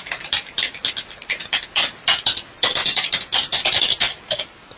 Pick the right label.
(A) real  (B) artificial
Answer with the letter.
A